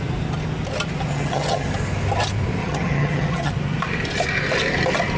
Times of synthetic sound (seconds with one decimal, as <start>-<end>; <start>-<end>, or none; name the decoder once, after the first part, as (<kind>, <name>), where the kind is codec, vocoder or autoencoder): 1.1-1.7 (vocoder, HiFi-GAN); 2.6-3.5

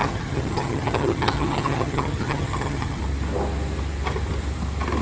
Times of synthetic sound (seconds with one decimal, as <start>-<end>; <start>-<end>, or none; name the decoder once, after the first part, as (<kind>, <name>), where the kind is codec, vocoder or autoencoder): 0.0-3.0 (vocoder, HiFi-GAN)